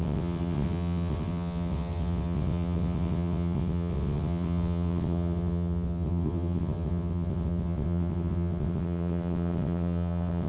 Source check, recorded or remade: remade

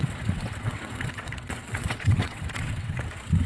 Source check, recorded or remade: remade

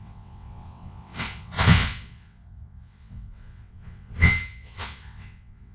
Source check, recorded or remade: remade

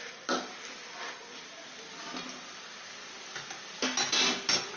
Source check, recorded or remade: recorded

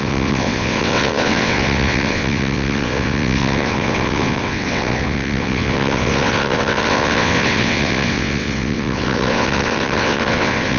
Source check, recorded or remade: remade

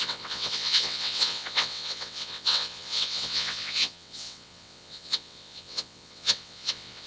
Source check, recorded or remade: remade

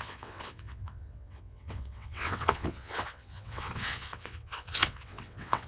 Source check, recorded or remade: remade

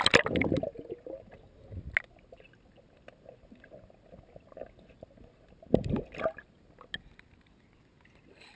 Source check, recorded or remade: recorded